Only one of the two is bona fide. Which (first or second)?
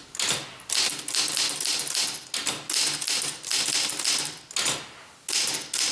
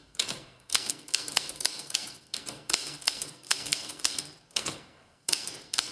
first